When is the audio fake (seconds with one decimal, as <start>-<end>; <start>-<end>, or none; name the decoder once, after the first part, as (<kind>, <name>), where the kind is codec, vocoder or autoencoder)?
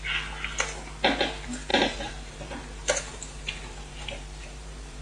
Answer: 1.7-5.0 (vocoder, BigVGAN v2)